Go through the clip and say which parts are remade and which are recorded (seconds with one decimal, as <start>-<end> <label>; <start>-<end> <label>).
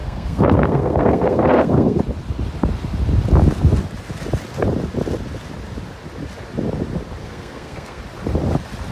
0.0-2.0 remade; 2.0-7.2 recorded; 7.2-8.0 remade; 8.0-8.9 recorded